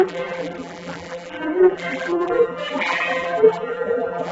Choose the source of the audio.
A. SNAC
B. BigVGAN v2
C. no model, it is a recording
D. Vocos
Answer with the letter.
B